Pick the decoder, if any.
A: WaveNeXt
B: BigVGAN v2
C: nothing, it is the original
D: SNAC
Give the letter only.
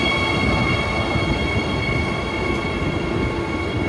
C